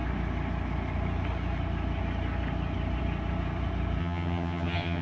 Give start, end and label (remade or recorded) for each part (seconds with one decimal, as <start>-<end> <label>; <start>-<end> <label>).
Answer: 0.0-4.0 recorded; 4.0-5.0 remade